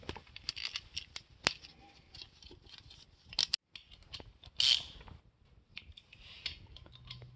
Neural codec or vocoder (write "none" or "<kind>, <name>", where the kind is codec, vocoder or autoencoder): none